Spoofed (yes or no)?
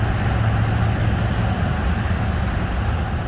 no